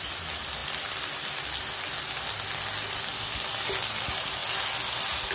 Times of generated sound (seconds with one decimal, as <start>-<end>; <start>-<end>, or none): none